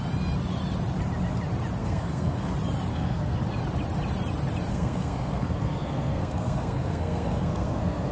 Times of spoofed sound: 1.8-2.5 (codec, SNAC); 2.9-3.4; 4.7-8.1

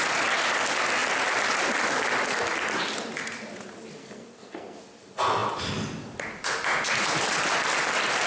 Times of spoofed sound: 4.0-4.8 (codec, SNAC)

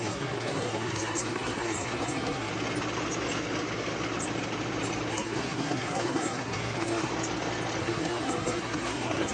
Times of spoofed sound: 0.0-2.5 (codec, SNAC); 5.1-7.1; 7.8-9.3

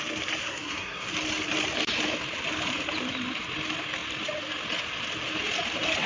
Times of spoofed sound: 0.4-1.1 (codec, SNAC)

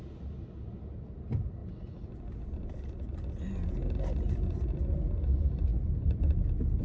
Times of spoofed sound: none

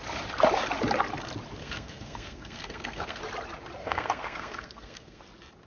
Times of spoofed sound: 1.6-3.2 (codec, SNAC); 3.8-5.2

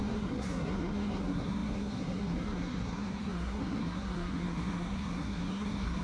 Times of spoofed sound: 0.0-6.0 (codec, SNAC)

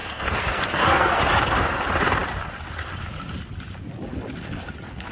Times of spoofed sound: 0.0-1.2 (codec, SNAC)